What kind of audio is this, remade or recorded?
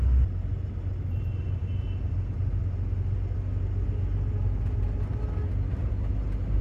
recorded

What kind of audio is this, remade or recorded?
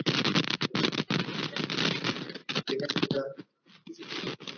recorded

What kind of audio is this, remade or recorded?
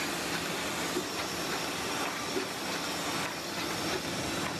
recorded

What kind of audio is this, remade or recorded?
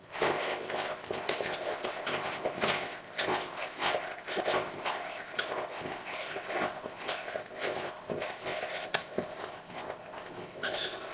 remade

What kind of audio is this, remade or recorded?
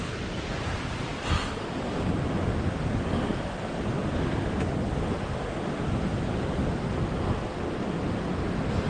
recorded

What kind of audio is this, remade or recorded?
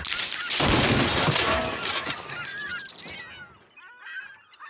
recorded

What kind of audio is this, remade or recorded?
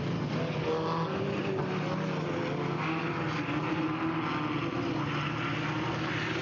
recorded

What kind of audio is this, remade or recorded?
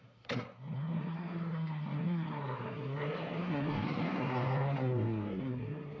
remade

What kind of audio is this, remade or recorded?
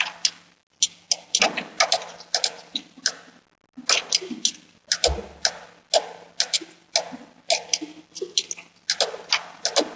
recorded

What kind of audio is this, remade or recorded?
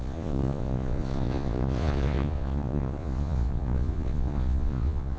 remade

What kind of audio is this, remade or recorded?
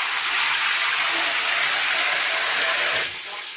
recorded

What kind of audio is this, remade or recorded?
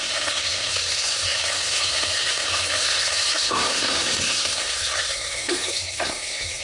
remade